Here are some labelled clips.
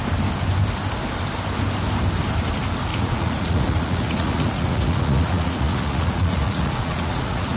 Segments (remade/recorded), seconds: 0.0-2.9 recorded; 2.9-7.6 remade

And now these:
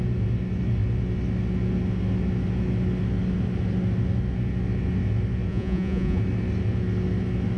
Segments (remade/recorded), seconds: 0.0-5.5 recorded; 5.5-6.2 remade; 6.2-7.6 recorded

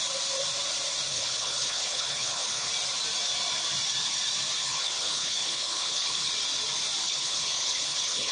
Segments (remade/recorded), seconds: 0.0-1.1 recorded; 1.1-2.7 remade; 2.7-4.6 recorded; 4.6-6.3 remade; 6.3-7.0 recorded; 7.0-8.3 remade

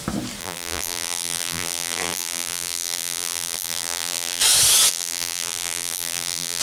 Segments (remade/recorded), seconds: 0.0-0.4 recorded; 0.4-4.4 remade; 4.4-4.9 recorded; 4.9-6.6 remade

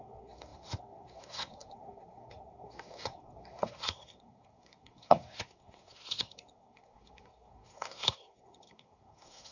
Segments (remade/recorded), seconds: 0.0-9.5 remade